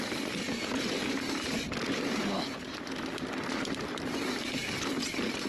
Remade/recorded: recorded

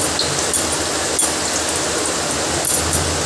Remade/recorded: recorded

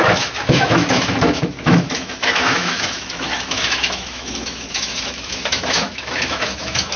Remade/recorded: remade